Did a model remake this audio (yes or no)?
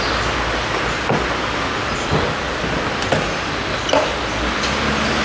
no